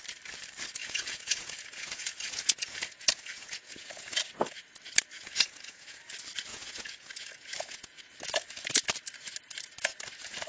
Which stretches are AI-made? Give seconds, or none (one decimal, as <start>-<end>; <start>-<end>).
0.8-4.2; 5.1-6.0; 6.5-8.0